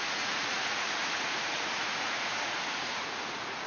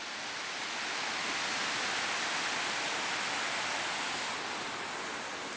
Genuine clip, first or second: second